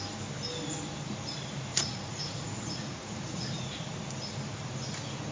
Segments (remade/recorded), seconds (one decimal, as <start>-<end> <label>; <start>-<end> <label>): 0.0-1.7 recorded; 1.7-3.9 remade; 3.9-5.3 recorded